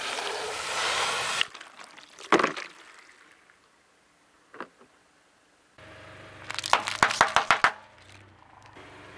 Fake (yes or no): no